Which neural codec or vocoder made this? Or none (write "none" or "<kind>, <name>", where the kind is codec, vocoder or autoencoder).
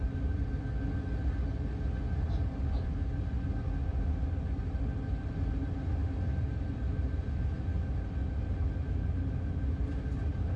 none